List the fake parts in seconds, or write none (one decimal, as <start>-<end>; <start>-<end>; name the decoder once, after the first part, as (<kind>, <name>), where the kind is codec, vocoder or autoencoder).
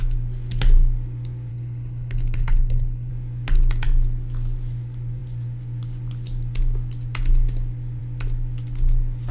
1.5-3.1 (codec, HILCodec)